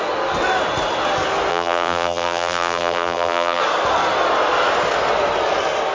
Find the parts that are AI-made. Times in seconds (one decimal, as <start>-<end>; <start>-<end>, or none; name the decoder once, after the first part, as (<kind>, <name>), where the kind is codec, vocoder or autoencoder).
1.5-3.6 (vocoder, BigVGAN v2)